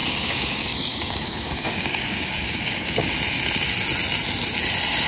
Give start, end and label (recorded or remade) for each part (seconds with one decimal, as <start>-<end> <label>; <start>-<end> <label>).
0.0-3.1 remade; 3.1-5.1 recorded